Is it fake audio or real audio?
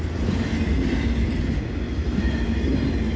real